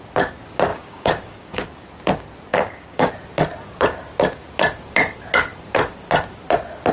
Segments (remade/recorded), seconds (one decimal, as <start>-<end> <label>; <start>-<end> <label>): 0.0-0.7 recorded; 0.7-1.7 remade; 1.7-2.5 recorded; 2.5-3.1 remade; 3.1-6.9 recorded